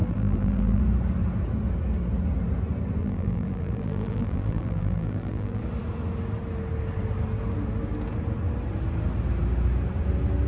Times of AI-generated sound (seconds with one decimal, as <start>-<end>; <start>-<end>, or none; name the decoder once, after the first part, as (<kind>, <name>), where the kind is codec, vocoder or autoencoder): 0.0-0.8 (vocoder, BigVGAN v2); 3.0-5.6